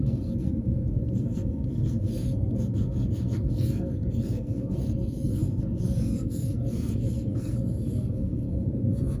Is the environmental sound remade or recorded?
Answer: remade